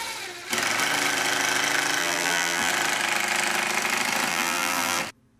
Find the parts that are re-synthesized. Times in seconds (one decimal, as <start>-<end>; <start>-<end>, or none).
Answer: 2.0-2.7; 4.3-5.0